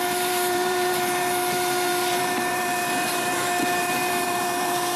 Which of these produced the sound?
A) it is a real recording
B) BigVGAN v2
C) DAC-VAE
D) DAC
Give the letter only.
B